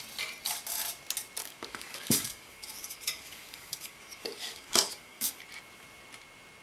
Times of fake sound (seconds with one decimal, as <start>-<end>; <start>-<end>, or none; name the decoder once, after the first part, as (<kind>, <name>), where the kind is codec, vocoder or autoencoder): 1.4-5.4 (codec, DAC)